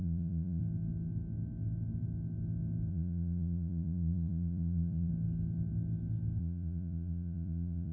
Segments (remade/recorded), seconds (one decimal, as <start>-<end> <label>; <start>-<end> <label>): 0.0-0.6 remade; 0.6-2.9 recorded; 2.9-5.1 remade; 5.1-6.4 recorded; 6.4-7.9 remade

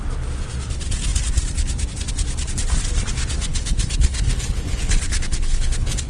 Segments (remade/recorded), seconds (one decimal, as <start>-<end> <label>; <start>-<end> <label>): 0.0-3.5 recorded; 3.5-6.1 remade

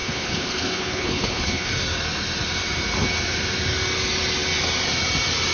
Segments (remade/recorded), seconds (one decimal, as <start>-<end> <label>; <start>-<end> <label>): 0.0-1.7 remade; 1.7-5.5 recorded

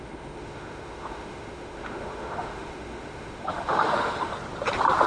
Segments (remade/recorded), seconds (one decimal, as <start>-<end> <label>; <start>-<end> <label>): 0.0-4.3 remade; 4.3-5.1 recorded

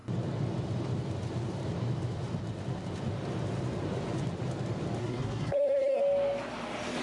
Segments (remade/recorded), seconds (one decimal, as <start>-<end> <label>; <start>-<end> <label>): 0.0-5.0 recorded; 5.0-6.0 remade; 6.0-7.0 recorded